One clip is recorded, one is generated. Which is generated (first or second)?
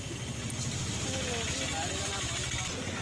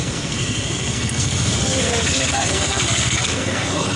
second